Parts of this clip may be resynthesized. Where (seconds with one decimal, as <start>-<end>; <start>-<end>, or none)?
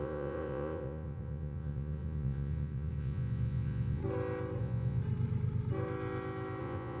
0.0-4.0; 4.6-5.0; 6.6-7.0